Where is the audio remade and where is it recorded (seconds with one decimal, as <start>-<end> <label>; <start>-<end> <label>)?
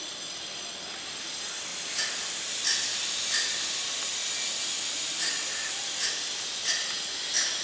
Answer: 0.0-7.6 recorded